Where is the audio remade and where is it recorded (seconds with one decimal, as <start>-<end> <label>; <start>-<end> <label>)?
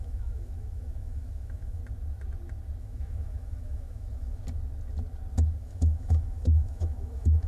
0.0-1.8 remade; 1.8-2.8 recorded; 2.8-4.4 remade; 4.4-5.6 recorded; 5.6-7.5 remade